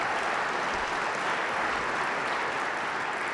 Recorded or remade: recorded